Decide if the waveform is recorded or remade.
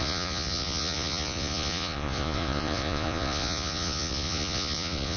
remade